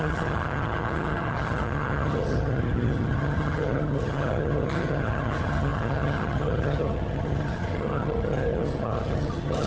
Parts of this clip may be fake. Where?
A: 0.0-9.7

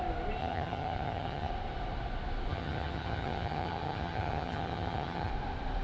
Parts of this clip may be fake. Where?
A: 0.4-1.5; 2.5-5.3

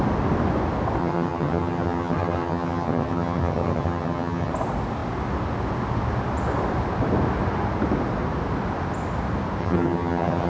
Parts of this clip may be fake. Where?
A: 1.0-4.5; 9.6-10.5

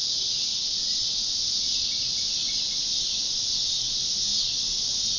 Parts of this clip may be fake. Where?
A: none

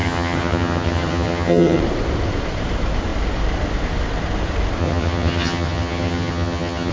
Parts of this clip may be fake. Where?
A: 0.0-1.8; 4.8-6.9

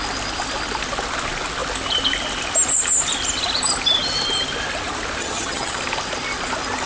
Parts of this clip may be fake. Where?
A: 5.2-5.8

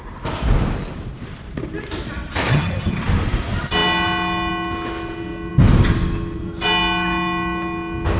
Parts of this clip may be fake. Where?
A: 2.5-3.0

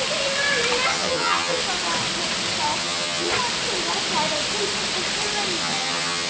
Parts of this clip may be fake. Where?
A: 0.9-1.6; 2.8-3.3; 5.6-6.3